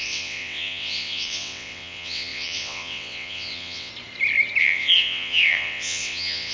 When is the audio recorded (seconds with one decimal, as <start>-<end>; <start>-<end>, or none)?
3.9-4.6